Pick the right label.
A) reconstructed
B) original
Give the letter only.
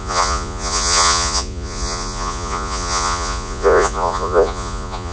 A